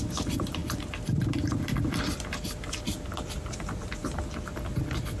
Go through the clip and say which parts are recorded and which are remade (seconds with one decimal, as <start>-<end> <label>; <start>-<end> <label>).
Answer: 0.0-4.0 remade; 4.0-4.7 recorded; 4.7-5.2 remade